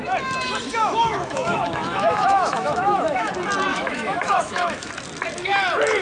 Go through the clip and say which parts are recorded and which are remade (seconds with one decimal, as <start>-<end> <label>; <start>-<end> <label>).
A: 0.0-0.8 recorded; 0.8-3.3 remade; 3.3-3.7 recorded; 3.7-4.9 remade; 4.9-6.0 recorded